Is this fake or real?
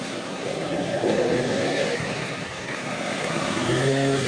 fake